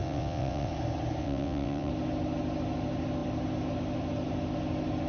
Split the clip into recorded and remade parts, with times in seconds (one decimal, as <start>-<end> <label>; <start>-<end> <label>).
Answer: 0.0-0.7 remade; 0.7-1.2 recorded; 1.2-1.9 remade; 1.9-5.1 recorded